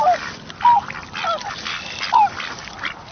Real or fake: real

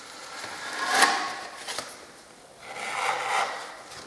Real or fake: real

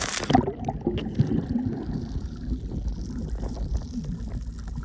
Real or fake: real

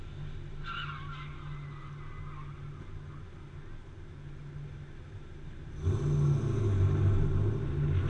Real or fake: real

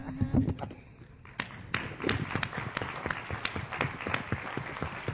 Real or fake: real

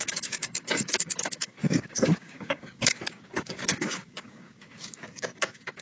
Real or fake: fake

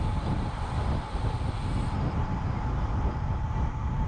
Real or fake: real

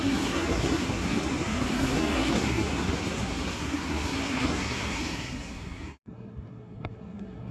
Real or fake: fake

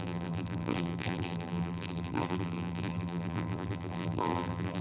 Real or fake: fake